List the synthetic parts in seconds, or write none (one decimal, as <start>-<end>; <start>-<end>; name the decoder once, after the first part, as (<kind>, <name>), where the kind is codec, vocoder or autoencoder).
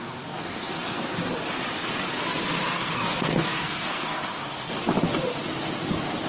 0.0-1.0 (codec, SNAC); 2.7-4.7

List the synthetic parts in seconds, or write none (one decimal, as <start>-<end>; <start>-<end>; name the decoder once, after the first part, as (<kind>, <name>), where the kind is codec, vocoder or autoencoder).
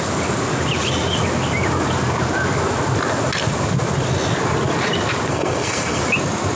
5.3-6.0 (codec, SNAC)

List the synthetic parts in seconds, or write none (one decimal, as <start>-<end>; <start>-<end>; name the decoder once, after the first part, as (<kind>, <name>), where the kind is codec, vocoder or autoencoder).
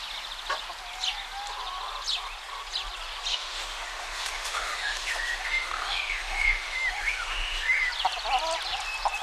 3.3-7.9 (autoencoder, DAC-VAE)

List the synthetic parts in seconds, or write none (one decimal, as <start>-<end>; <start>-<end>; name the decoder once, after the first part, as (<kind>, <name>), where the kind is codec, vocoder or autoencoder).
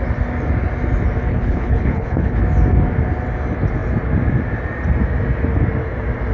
1.3-2.4 (codec, HILCodec)